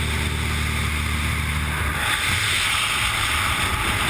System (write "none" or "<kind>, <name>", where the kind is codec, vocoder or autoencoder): none